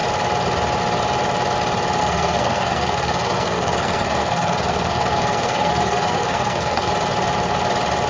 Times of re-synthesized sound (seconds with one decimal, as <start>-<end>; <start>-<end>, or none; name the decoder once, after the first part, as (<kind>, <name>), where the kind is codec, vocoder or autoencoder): 2.0-6.9 (codec, SNAC)

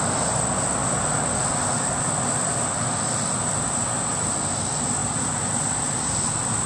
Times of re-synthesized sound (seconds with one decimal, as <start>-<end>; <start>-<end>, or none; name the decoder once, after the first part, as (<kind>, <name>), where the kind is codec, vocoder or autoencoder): none

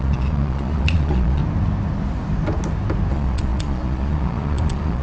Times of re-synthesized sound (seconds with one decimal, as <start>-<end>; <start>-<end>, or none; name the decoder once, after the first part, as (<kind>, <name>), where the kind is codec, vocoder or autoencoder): 0.0-1.4 (vocoder, Vocos); 3.1-5.0

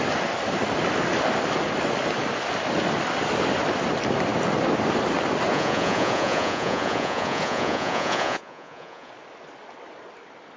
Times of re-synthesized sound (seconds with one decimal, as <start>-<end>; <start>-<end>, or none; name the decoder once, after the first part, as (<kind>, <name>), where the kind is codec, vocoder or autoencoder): 5.5-9.1 (vocoder, Vocos)

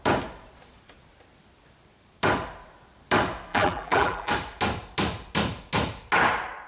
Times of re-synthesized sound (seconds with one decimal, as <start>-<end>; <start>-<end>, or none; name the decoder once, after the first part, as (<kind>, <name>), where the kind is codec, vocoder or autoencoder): 3.5-4.3 (vocoder, BigVGAN v2)

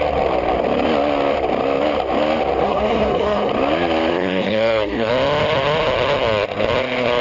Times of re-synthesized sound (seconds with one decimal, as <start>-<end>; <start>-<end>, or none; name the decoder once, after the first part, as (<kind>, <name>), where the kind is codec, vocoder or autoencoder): 2.6-3.5 (codec, SNAC); 4.1-5.1

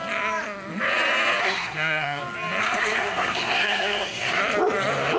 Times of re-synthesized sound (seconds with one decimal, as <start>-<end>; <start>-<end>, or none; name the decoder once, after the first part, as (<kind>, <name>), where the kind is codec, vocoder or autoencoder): 1.4-2.2 (codec, SNAC); 2.6-4.4

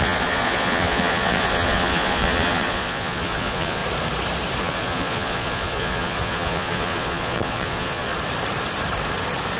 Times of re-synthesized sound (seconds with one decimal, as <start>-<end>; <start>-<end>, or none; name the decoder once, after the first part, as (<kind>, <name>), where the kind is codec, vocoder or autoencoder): 0.0-3.8 (vocoder, Vocos); 4.6-8.1